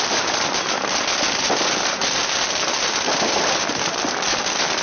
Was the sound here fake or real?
fake